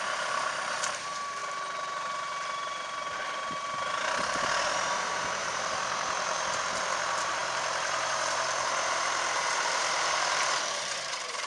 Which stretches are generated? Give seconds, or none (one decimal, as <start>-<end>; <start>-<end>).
0.0-1.4; 4.9-11.5